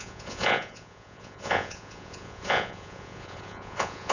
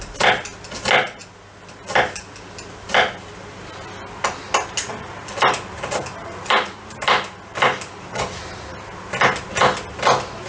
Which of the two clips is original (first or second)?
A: second